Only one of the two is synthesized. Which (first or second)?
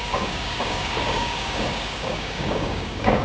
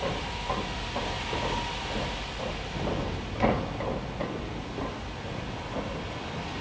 first